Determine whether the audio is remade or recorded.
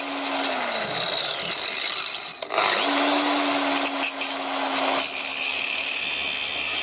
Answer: recorded